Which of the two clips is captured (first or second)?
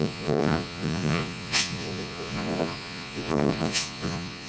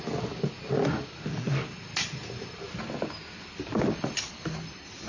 second